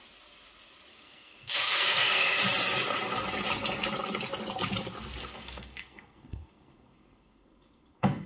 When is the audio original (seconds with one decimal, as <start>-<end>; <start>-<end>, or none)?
0.0-0.9; 2.4-5.2